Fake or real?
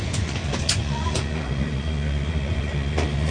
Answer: fake